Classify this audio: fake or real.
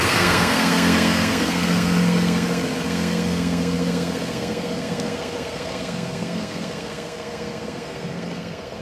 fake